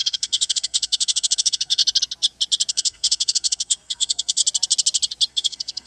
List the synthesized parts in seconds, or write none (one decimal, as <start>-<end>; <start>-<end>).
0.0-1.8; 2.7-4.4; 5.3-5.9

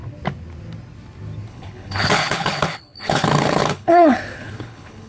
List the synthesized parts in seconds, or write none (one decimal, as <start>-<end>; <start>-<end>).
1.5-5.1

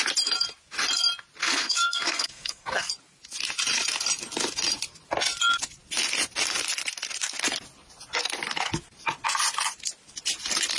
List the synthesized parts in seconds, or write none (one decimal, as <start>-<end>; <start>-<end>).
1.4-2.9

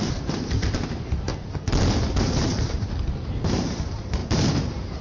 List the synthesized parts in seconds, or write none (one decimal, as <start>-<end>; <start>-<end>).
0.0-1.3; 2.2-4.2

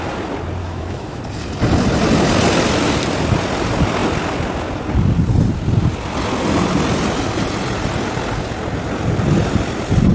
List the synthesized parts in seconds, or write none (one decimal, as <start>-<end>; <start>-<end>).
0.6-1.2